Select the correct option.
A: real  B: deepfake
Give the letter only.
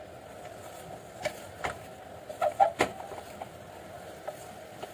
A